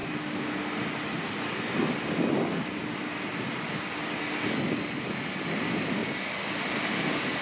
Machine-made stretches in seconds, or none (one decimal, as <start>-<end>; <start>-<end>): none